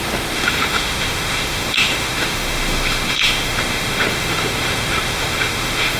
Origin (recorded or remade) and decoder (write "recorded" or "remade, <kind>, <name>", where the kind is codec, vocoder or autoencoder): remade, autoencoder, DAC-VAE